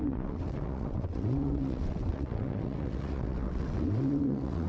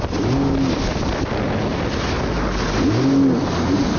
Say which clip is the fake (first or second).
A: first